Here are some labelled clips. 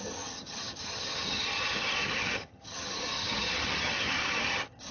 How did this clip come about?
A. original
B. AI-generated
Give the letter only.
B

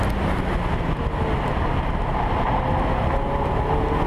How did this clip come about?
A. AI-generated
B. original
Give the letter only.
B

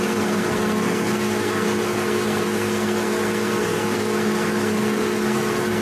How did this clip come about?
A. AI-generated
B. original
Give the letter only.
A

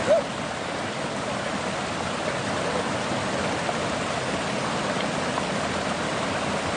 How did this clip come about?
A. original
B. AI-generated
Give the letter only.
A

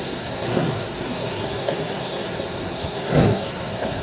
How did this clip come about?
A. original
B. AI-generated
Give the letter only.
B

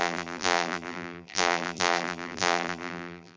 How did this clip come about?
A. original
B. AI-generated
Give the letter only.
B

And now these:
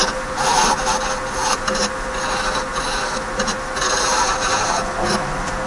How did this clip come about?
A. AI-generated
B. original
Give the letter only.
B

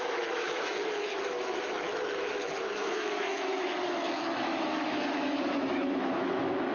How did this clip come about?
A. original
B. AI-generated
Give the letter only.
B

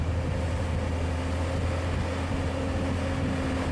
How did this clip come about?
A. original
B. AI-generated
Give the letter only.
A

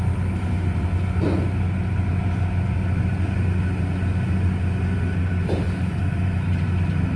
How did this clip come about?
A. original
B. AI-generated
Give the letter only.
A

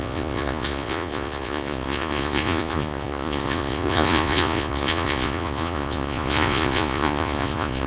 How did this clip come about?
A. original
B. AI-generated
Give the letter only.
B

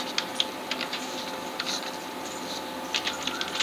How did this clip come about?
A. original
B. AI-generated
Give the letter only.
A